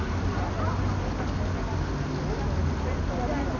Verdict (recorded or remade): recorded